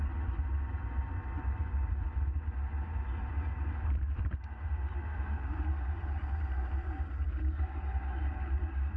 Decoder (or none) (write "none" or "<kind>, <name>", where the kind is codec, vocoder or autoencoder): none